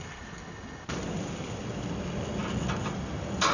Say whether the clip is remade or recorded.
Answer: recorded